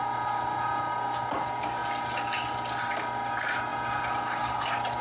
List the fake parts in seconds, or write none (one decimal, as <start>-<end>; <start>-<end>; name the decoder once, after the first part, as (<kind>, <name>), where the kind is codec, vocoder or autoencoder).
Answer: none